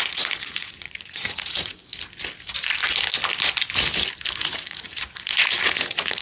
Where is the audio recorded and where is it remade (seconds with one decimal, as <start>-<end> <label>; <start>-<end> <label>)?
0.0-1.8 remade; 1.8-4.4 recorded; 4.4-6.2 remade